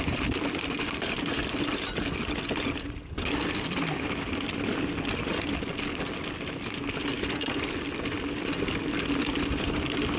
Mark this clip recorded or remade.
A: recorded